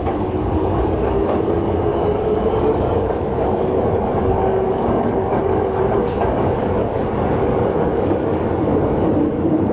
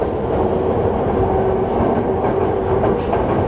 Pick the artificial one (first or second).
first